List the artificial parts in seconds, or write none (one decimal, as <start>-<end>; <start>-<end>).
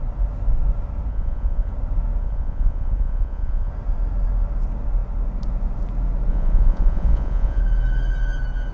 1.1-1.7; 2.2-3.7; 6.3-7.6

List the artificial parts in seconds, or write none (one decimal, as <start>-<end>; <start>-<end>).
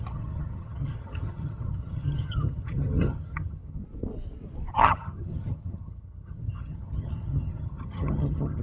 0.0-3.8; 4.7-8.6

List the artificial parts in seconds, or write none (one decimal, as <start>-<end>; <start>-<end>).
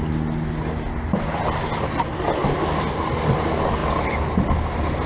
none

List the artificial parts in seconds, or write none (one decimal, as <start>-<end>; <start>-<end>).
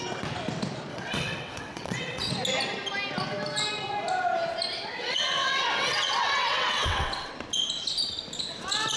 0.9-2.3; 5.0-7.3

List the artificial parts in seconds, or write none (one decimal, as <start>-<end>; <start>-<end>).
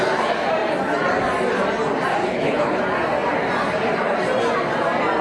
2.2-2.8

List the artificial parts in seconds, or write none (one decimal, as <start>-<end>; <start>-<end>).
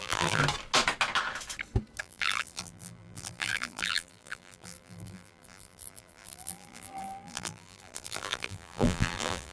0.0-0.4; 2.0-9.5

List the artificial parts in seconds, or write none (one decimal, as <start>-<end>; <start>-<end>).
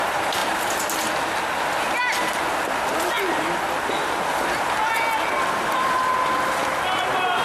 none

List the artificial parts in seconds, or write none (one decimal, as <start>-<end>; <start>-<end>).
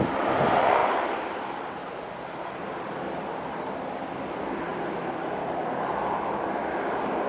0.8-2.9